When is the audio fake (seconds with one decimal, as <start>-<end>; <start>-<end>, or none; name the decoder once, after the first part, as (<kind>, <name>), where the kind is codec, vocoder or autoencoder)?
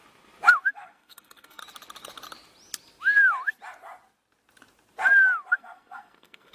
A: 0.7-1.6 (codec, SNAC); 5.5-6.5